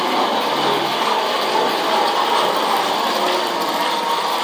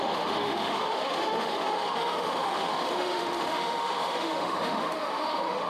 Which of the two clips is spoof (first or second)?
second